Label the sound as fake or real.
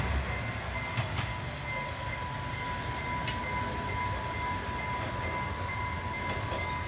real